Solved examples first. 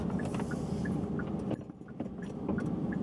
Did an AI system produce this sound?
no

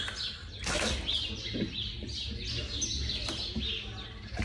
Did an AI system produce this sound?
no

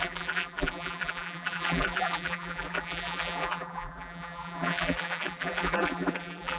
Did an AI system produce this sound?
yes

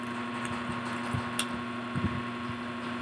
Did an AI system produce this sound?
no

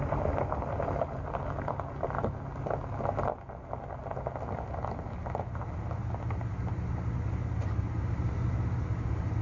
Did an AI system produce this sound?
no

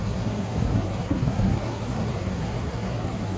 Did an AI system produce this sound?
yes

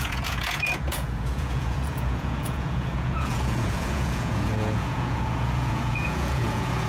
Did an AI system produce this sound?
yes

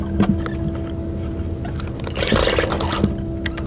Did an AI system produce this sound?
no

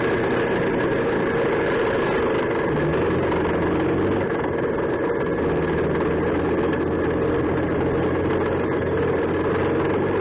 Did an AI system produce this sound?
no